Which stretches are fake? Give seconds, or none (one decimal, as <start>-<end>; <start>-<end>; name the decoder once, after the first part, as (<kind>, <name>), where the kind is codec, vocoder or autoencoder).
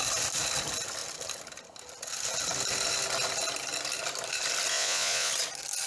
4.7-5.3 (vocoder, Vocos)